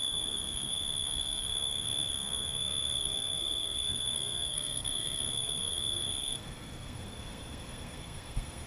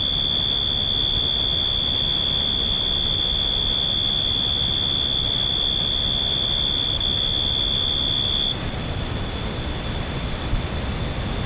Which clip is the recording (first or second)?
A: second